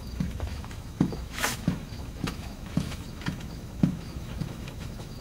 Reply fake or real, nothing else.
fake